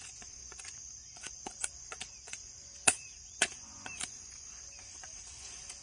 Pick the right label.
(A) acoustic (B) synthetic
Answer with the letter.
B